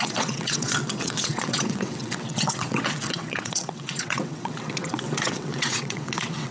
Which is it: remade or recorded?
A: remade